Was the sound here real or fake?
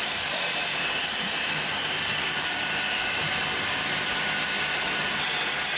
real